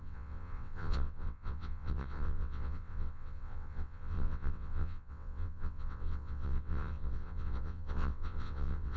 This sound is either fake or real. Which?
fake